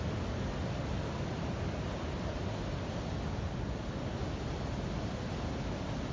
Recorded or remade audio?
recorded